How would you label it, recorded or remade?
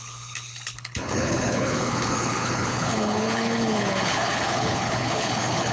remade